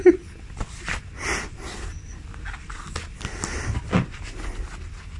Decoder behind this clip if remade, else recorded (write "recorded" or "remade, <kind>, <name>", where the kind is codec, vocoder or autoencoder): recorded